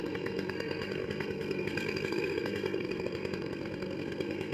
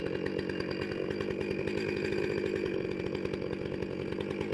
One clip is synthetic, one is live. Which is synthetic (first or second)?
first